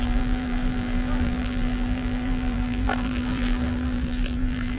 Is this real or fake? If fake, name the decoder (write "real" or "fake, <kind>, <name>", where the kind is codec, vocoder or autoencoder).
fake, vocoder, BigVGAN v2